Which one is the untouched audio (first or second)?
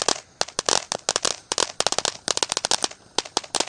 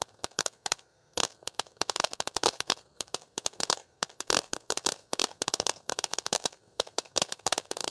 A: first